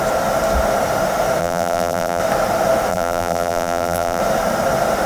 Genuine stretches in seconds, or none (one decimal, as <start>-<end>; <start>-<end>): 0.0-1.4; 2.2-2.9; 4.2-5.1